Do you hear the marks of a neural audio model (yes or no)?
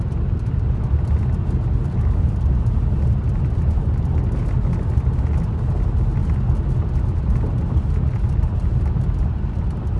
no